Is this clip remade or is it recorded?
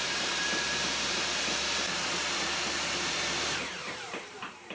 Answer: remade